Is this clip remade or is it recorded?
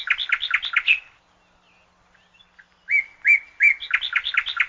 recorded